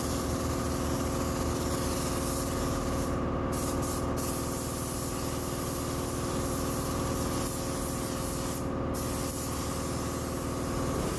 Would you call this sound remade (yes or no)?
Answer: no